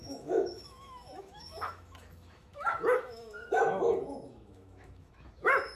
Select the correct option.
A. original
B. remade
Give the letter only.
B